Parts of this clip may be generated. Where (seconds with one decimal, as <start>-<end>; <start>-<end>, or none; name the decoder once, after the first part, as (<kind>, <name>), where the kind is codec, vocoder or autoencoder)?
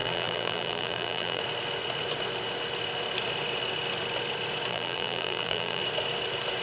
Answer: 0.0-1.4 (vocoder, BigVGAN v2); 4.7-5.8